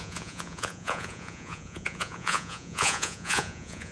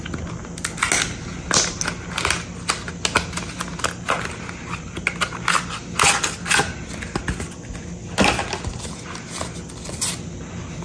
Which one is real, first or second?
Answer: second